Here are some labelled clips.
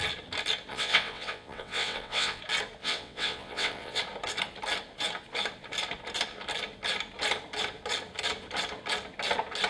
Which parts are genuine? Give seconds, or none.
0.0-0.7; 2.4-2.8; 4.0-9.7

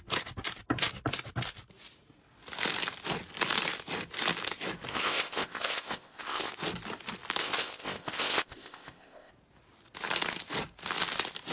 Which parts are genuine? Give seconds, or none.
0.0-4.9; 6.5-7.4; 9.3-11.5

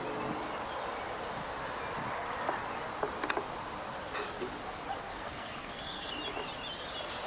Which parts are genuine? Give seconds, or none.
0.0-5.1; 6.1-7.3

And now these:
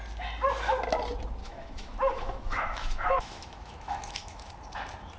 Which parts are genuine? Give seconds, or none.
0.0-1.4; 4.5-5.2